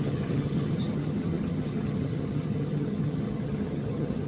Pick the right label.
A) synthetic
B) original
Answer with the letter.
A